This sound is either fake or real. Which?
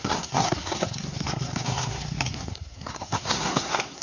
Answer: fake